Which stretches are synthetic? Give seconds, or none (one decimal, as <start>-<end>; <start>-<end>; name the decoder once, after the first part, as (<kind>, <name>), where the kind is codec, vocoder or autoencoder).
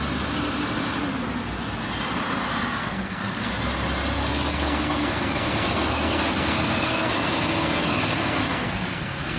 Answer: 2.8-3.5 (codec, SNAC); 4.2-9.4